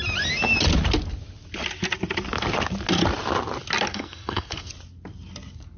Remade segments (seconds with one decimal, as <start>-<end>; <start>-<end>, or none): 3.9-4.7